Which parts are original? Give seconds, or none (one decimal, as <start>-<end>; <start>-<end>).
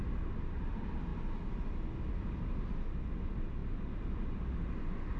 0.0-5.2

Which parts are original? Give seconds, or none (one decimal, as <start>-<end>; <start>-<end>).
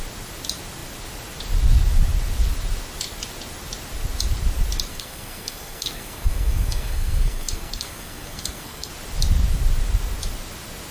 0.0-4.9; 8.9-10.9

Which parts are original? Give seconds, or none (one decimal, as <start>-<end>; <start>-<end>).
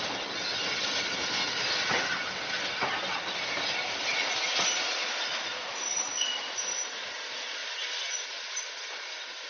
0.0-9.5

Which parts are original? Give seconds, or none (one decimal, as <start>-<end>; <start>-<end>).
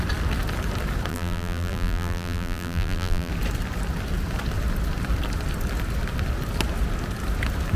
0.0-1.1; 3.3-7.8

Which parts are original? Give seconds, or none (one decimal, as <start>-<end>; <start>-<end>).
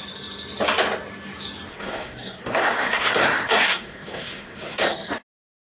0.0-1.7; 5.1-5.7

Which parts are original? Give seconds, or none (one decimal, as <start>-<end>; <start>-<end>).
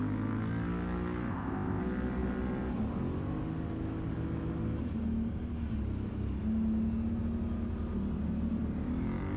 0.0-1.3; 1.8-9.4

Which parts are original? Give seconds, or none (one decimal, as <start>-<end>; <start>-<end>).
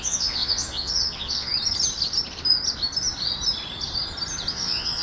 1.5-4.5